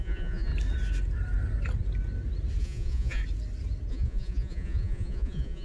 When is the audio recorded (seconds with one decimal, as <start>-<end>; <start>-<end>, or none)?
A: 0.5-2.6; 3.2-3.9